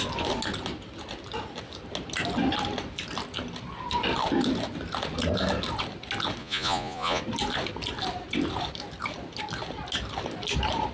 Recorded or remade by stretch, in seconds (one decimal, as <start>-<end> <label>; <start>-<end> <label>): 0.0-6.4 recorded; 6.4-7.2 remade; 7.2-10.9 recorded

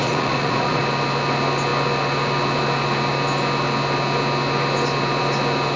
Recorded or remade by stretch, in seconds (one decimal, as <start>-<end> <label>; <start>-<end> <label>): 0.0-0.8 remade; 0.8-5.8 recorded

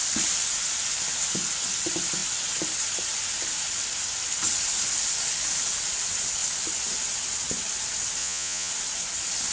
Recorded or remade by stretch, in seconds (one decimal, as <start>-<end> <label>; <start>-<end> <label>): 0.0-8.2 recorded; 8.2-8.7 remade; 8.7-9.5 recorded

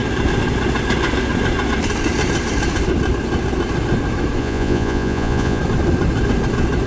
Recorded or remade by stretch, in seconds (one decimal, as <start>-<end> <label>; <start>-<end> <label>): 0.0-4.4 recorded; 4.4-5.6 remade; 5.6-6.9 recorded

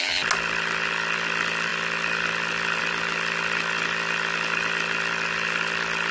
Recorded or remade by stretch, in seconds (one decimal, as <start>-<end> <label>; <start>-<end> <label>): 0.0-6.1 recorded

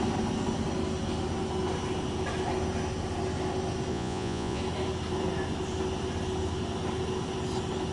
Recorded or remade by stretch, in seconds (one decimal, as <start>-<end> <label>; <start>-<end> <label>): 0.0-3.9 recorded; 3.9-4.6 remade; 4.6-7.9 recorded